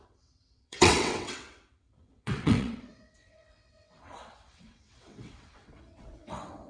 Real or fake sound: fake